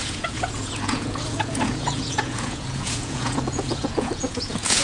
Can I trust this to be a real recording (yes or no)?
no